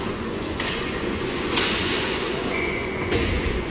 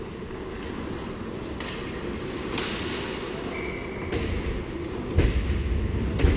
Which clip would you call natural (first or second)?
second